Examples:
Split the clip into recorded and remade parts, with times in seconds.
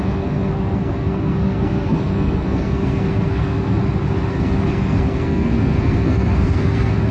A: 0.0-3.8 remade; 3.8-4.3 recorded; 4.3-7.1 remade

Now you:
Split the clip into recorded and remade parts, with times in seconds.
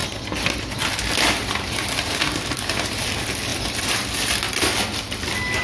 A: 0.0-5.6 recorded